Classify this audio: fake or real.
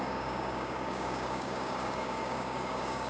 fake